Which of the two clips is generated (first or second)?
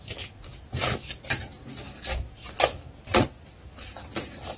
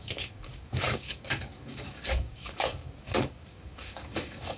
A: second